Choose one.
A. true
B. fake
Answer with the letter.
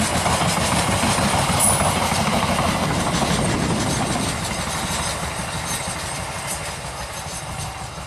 A